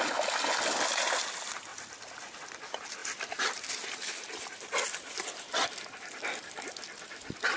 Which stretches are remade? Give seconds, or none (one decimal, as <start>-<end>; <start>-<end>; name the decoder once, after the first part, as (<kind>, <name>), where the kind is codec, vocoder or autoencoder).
1.7-2.4 (vocoder, BigVGAN v2); 3.0-7.6